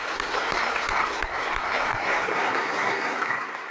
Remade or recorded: remade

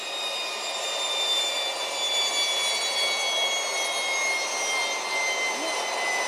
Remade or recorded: recorded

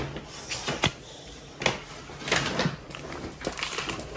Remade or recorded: recorded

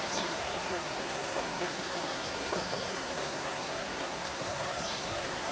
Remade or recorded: remade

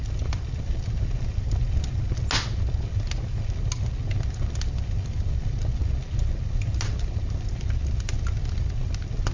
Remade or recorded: recorded